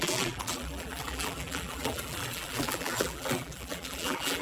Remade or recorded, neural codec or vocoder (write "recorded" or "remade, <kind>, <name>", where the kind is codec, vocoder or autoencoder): remade, vocoder, BigVGAN v2